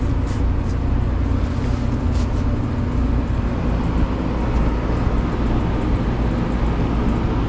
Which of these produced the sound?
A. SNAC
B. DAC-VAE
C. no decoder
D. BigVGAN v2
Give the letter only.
C